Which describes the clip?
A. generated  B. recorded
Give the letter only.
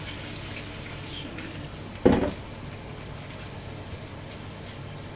B